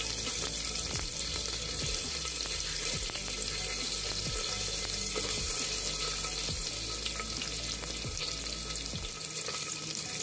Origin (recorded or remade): recorded